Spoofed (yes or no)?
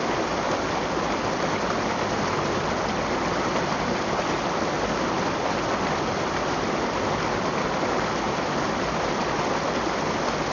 no